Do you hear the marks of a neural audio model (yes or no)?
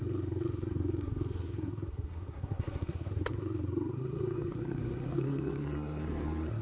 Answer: yes